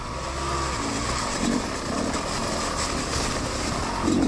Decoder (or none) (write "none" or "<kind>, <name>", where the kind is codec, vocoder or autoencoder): none